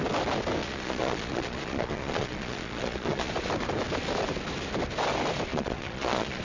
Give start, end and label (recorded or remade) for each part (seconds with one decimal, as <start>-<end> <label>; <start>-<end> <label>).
0.0-0.6 recorded; 0.6-3.3 remade; 3.3-5.5 recorded; 5.5-6.4 remade